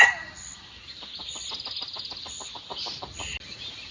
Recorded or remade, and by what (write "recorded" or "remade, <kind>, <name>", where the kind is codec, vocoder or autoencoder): recorded